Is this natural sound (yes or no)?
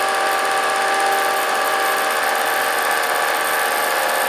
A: yes